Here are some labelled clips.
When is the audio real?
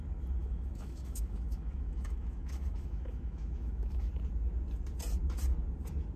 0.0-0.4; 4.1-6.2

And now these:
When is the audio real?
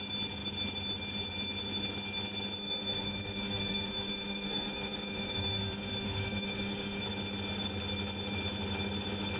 0.0-2.6; 7.0-9.4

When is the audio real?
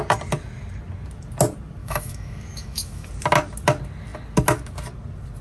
0.0-1.8; 3.1-5.4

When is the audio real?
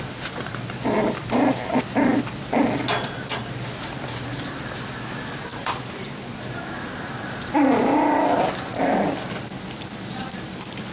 0.0-10.9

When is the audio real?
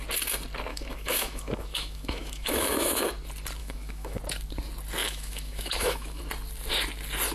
0.0-0.7; 3.1-3.6; 4.2-5.0; 6.2-7.3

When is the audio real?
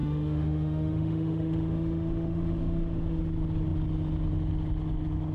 3.2-5.3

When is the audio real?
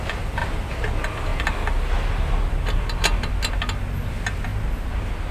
0.0-5.3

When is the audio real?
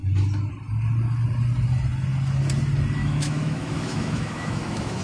0.0-3.0